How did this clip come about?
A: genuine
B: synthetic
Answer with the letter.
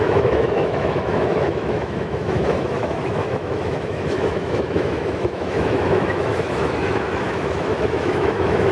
B